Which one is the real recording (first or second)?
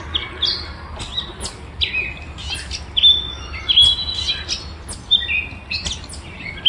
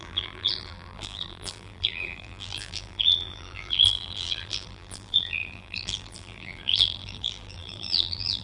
first